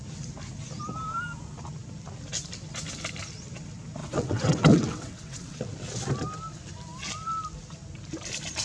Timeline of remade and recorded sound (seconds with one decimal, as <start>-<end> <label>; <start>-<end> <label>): 0.0-4.0 recorded; 4.0-5.6 remade; 5.6-8.6 recorded